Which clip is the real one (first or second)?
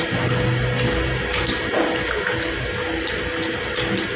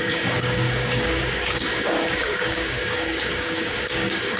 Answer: first